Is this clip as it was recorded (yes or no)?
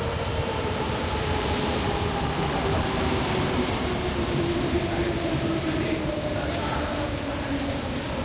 no